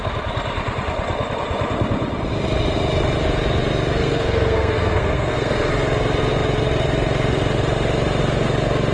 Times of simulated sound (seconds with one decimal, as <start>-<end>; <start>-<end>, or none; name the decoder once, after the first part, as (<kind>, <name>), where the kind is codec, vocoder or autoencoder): 4.0-5.7 (codec, SNAC)